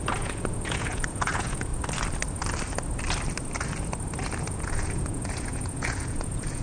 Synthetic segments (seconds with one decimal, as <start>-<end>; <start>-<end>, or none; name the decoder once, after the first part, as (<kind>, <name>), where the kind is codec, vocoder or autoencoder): 0.0-1.7 (vocoder, Vocos); 4.4-6.6